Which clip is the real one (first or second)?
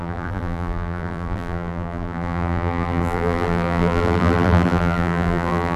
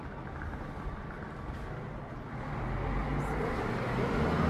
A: second